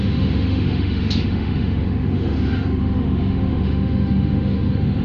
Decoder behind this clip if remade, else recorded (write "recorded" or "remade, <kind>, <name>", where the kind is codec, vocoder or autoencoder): remade, autoencoder, DAC-VAE